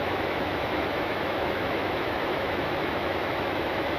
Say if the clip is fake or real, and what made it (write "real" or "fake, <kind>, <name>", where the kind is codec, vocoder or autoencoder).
fake, autoencoder, DAC-VAE